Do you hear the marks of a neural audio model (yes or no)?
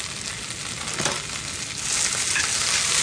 no